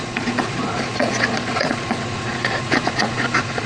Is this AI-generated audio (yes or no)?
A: yes